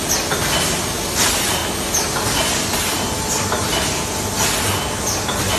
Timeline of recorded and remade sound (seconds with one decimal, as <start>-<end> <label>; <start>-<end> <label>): 0.0-5.6 recorded